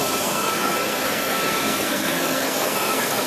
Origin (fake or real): fake